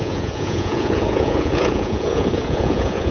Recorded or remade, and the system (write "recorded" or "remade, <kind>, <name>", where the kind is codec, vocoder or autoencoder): remade, vocoder, Vocos